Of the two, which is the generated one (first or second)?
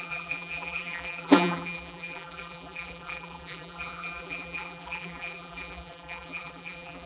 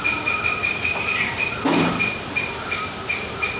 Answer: first